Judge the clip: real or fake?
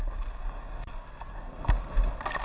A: real